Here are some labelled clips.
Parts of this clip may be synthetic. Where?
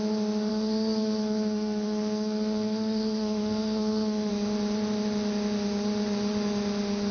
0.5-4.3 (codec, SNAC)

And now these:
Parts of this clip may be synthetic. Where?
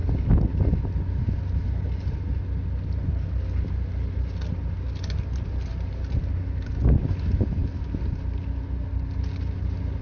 7.6-8.4 (vocoder, BigVGAN v2)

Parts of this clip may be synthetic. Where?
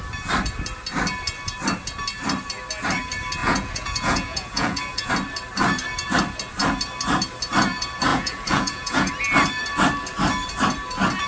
3.4-5.1 (vocoder, Vocos); 8.1-9.1